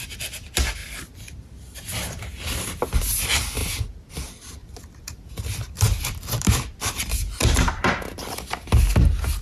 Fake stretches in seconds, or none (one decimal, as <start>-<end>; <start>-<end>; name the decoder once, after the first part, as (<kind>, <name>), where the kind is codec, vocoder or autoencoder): 4.6-7.9 (vocoder, BigVGAN v2)

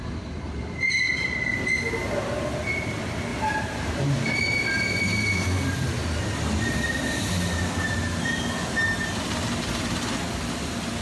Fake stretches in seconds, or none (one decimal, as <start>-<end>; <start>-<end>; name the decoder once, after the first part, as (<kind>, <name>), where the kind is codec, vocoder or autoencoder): 3.3-4.0 (vocoder, BigVGAN v2)